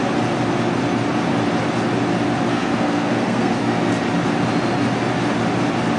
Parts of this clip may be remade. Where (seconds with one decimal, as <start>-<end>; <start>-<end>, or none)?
2.5-3.9